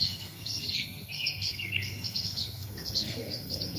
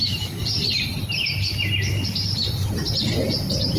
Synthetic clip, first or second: first